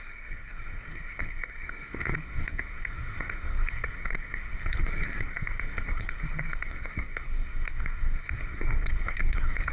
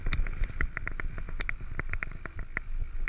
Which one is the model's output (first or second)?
first